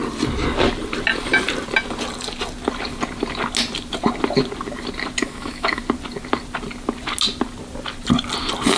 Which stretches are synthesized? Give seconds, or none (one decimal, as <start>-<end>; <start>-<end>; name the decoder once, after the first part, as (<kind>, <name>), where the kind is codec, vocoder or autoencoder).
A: 5.2-5.8 (autoencoder, DAC-VAE)